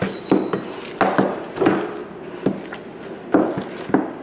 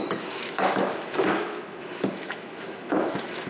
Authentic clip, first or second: first